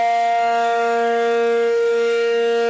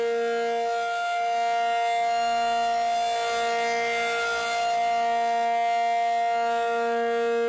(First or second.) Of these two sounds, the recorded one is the second